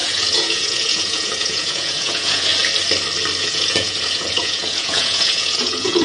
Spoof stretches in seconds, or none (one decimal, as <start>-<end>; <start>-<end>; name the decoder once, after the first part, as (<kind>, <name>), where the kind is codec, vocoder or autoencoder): 0.0-2.5 (vocoder, Vocos); 3.4-6.0